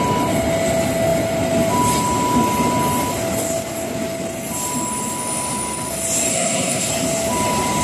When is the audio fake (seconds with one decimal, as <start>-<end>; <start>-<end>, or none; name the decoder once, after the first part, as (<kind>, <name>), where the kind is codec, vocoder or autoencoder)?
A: 6.3-6.9 (codec, SNAC)